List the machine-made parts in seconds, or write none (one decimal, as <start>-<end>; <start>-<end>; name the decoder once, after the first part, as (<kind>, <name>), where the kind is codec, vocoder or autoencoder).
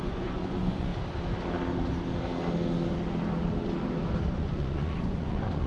0.0-0.9 (vocoder, Vocos); 4.3-5.7